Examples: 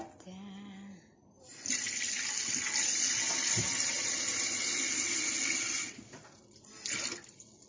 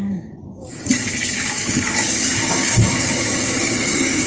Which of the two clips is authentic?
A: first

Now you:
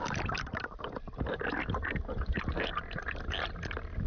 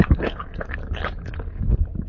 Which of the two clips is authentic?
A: first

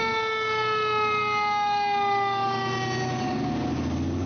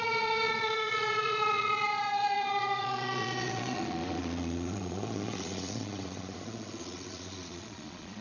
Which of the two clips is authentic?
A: first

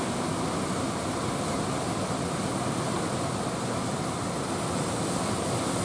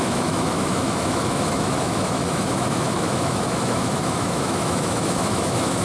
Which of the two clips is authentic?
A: first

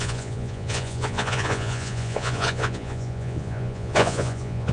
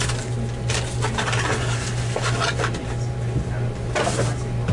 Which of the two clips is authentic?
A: second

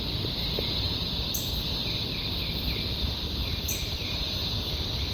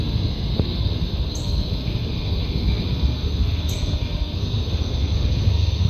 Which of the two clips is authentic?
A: first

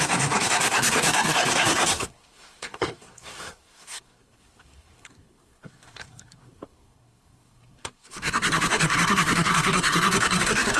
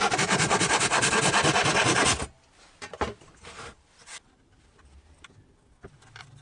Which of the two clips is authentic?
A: second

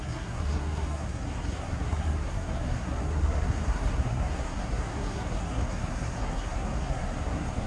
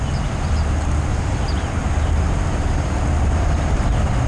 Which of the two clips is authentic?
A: second